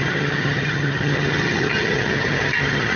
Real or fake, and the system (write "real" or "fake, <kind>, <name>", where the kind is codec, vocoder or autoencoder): fake, vocoder, HiFi-GAN